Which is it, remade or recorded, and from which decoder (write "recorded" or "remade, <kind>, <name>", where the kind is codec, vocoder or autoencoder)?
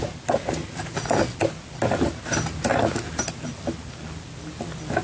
recorded